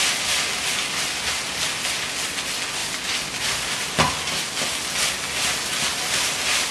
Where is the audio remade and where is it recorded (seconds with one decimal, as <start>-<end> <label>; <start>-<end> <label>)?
0.0-2.8 recorded; 2.8-4.5 remade; 4.5-6.7 recorded